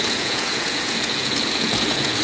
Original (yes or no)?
no